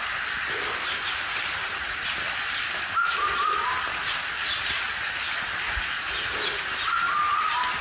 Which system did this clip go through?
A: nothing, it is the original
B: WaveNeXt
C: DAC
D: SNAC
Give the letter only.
A